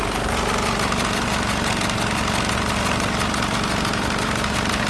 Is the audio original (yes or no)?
yes